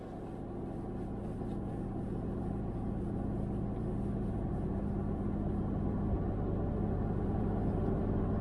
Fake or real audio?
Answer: real